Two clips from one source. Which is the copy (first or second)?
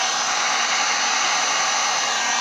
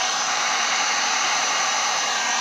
second